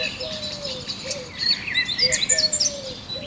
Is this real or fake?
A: fake